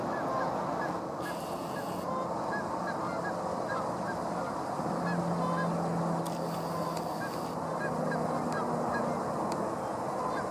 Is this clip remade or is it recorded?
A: recorded